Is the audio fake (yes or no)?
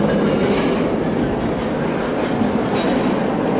no